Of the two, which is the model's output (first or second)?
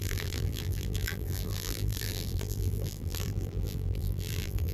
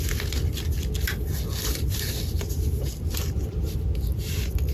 first